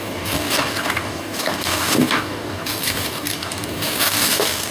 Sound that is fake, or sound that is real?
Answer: fake